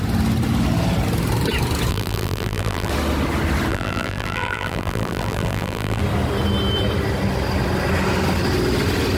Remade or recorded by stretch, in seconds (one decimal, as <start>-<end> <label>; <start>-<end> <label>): 0.0-1.9 recorded; 1.9-2.9 remade; 2.9-3.7 recorded; 3.7-6.0 remade; 6.0-9.2 recorded